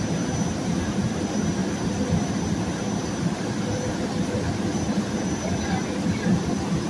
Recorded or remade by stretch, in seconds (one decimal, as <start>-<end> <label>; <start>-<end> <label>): 0.0-6.9 recorded